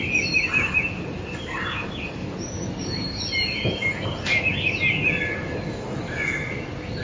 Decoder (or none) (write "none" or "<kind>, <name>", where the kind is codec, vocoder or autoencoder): none